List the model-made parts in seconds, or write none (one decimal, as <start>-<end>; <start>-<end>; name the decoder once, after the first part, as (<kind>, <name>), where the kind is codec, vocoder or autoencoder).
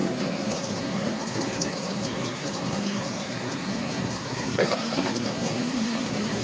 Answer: 0.0-6.4 (codec, SNAC)